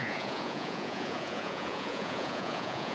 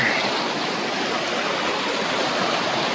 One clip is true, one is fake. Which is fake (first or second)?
first